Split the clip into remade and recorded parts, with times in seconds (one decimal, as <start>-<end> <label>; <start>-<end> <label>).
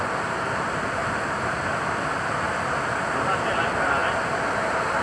0.0-1.0 recorded; 1.0-3.4 remade; 3.4-4.0 recorded; 4.0-4.6 remade; 4.6-5.0 recorded